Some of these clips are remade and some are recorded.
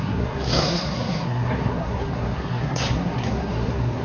remade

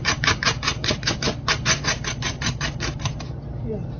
remade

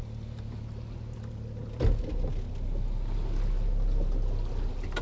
recorded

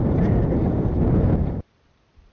recorded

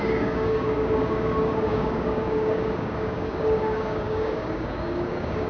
remade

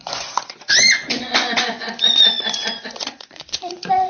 remade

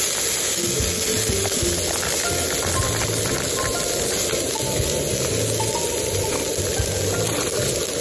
recorded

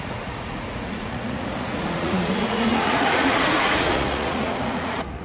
remade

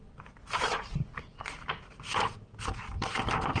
remade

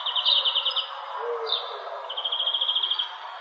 recorded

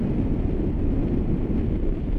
recorded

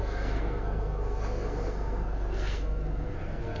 remade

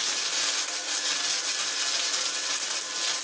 recorded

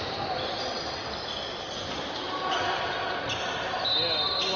recorded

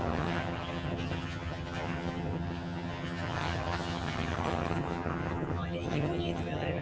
remade